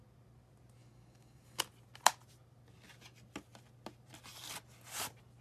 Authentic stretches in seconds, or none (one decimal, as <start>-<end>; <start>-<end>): 0.0-0.8; 1.6-5.4